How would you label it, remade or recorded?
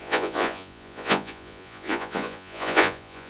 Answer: remade